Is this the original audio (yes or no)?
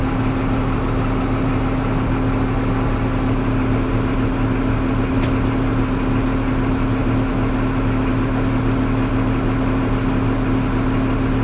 yes